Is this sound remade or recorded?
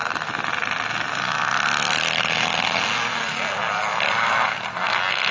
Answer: recorded